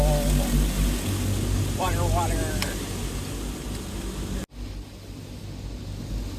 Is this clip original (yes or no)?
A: yes